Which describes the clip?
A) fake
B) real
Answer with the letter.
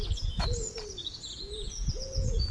A